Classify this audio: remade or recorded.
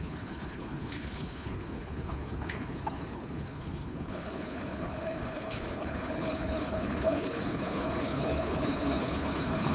remade